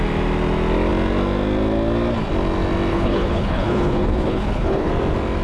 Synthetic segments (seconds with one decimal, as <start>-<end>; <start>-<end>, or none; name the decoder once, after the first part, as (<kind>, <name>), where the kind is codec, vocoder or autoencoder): 2.9-4.9 (codec, HILCodec)